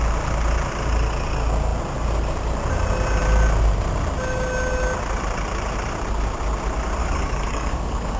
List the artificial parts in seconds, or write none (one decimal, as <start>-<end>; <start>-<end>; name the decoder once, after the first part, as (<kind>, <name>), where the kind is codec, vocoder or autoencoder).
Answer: 7.0-8.2 (codec, DAC)